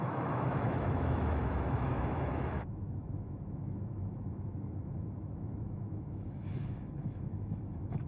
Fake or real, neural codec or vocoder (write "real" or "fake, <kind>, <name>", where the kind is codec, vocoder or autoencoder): fake, autoencoder, DAC-VAE